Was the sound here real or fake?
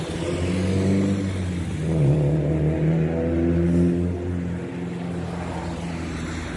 real